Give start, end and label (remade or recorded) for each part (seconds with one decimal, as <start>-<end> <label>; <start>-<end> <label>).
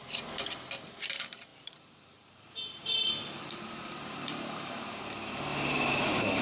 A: 0.0-1.5 recorded; 1.5-5.0 remade; 5.0-5.5 recorded; 5.5-6.4 remade